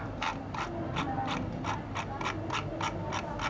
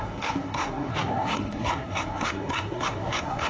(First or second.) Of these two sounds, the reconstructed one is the second